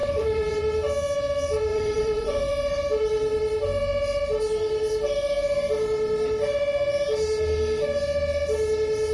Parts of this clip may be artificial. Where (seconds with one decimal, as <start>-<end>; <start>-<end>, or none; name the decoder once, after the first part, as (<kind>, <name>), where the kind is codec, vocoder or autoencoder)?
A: 0.0-0.6 (vocoder, Vocos); 1.7-2.5